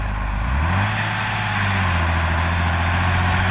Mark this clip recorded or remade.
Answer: recorded